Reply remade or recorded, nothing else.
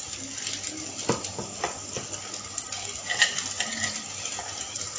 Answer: recorded